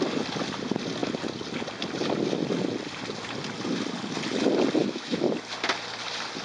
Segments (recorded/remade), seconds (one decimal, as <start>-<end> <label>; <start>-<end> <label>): 0.0-4.8 recorded; 4.8-5.3 remade; 5.3-6.4 recorded